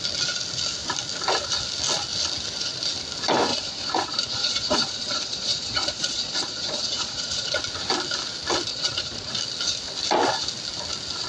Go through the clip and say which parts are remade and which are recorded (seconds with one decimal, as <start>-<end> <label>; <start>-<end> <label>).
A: 0.0-3.5 recorded; 3.5-7.6 remade; 7.6-8.7 recorded; 8.7-9.3 remade; 9.3-11.3 recorded